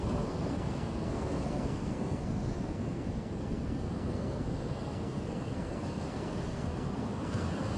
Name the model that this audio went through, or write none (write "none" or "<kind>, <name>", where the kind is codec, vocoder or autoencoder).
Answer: codec, SNAC